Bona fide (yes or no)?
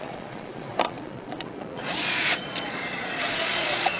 no